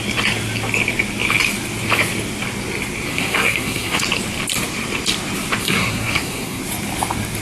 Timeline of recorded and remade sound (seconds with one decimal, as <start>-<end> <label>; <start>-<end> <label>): 0.0-3.1 recorded; 3.1-4.0 remade; 4.0-5.6 recorded; 5.6-6.6 remade; 6.6-7.4 recorded